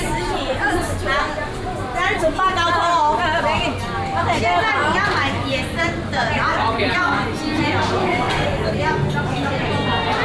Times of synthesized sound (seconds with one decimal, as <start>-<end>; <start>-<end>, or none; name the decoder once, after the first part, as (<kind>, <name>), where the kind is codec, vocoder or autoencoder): 8.0-8.7 (codec, SNAC)